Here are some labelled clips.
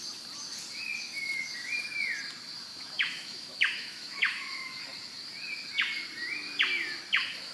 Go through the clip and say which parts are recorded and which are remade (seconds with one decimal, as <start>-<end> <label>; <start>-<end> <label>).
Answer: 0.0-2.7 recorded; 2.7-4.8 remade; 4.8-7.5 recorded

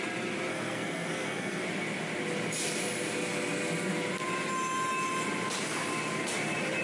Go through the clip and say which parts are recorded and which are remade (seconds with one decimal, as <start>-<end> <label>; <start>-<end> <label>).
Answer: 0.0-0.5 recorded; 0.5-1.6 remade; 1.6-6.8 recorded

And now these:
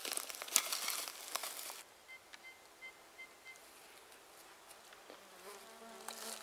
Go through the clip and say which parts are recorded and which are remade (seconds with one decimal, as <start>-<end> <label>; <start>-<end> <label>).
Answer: 0.0-6.4 recorded